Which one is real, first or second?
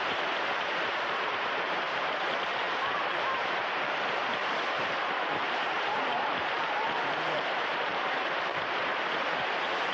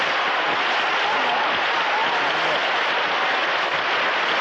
second